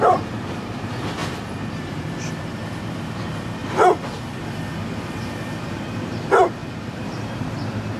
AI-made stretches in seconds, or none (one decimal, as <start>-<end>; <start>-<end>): 0.0-1.2; 1.8-3.6; 5.4-8.0